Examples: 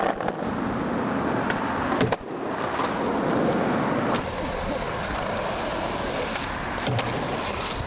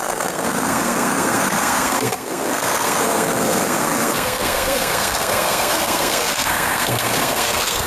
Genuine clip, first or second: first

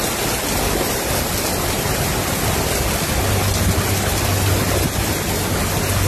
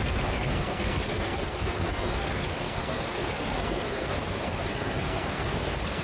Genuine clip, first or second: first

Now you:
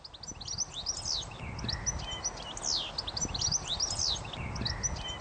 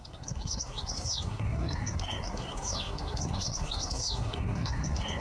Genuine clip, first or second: first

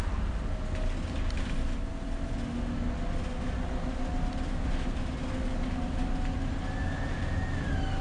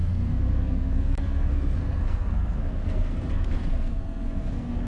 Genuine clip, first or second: first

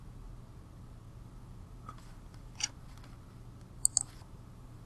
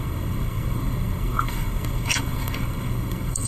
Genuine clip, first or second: first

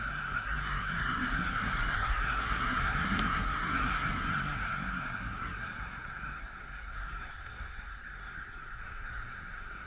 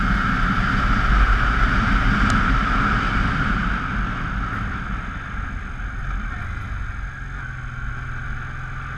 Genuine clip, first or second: second